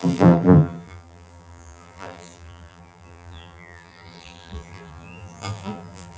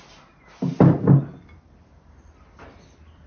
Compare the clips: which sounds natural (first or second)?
second